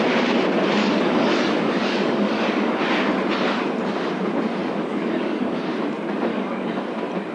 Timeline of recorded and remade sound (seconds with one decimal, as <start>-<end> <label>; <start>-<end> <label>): 0.0-0.8 recorded; 0.8-2.8 remade; 2.8-4.6 recorded; 4.6-5.7 remade; 5.7-6.3 recorded; 6.3-6.8 remade; 6.8-7.3 recorded